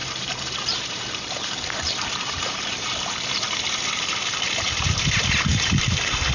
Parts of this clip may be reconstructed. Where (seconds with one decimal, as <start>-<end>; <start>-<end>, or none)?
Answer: 0.0-3.8; 5.5-6.3